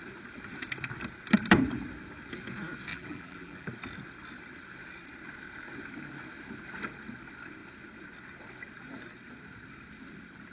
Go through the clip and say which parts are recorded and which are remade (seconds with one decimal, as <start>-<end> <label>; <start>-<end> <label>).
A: 0.0-2.9 recorded; 2.9-3.7 remade; 3.7-10.5 recorded